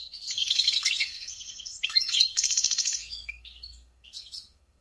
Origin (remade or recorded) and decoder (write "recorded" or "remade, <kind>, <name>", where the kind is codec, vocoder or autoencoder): remade, codec, SNAC